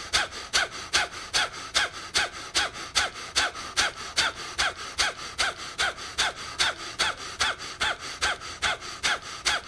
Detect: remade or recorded recorded